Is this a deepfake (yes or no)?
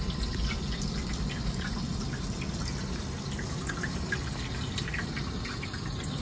no